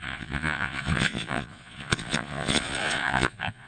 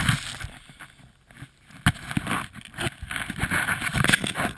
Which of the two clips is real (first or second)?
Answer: second